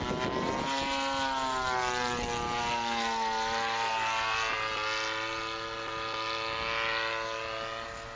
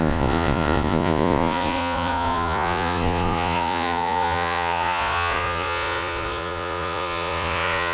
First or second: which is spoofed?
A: second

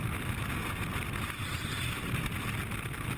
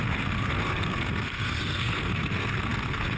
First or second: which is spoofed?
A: second